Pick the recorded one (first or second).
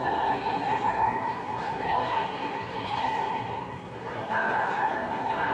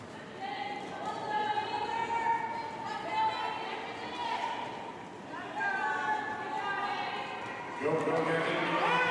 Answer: second